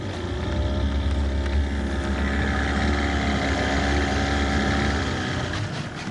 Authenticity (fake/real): real